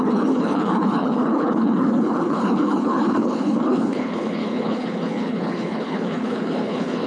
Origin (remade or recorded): remade